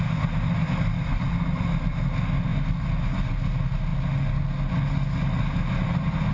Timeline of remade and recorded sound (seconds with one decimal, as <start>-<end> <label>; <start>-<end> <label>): 0.0-1.1 recorded; 1.1-1.7 remade; 1.7-6.3 recorded